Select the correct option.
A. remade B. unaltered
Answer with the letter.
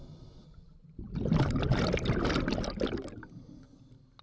B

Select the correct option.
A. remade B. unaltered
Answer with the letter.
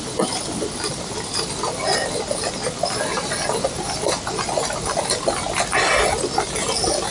B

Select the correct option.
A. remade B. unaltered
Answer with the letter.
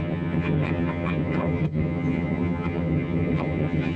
A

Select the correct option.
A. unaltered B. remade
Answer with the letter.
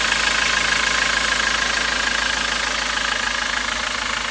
A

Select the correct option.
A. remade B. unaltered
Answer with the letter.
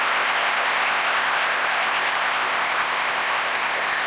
A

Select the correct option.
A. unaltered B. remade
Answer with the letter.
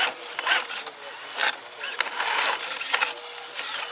A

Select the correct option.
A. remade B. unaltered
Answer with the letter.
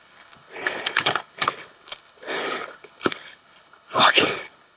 A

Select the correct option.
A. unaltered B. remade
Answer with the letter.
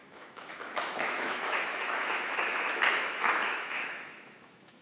B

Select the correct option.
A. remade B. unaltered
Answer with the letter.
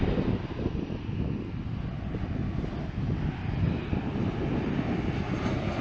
B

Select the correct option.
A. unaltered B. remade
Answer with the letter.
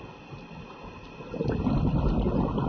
A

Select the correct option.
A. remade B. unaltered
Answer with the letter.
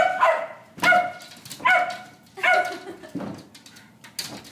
B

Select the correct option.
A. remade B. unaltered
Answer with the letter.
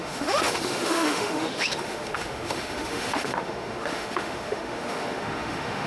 A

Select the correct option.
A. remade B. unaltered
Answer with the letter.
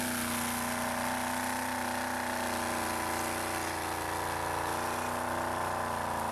B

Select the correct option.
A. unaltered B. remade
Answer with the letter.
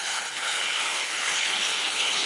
B